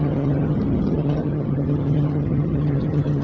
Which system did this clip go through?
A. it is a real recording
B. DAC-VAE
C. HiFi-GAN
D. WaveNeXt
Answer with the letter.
C